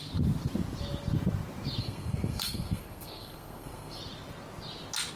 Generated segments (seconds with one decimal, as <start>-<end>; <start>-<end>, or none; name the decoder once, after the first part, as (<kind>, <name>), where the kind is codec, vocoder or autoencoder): 1.8-4.0 (codec, SNAC)